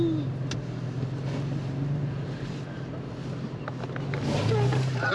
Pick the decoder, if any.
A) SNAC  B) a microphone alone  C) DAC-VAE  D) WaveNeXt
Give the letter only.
B